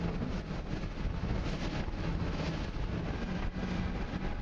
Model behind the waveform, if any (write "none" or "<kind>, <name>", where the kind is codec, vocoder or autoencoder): none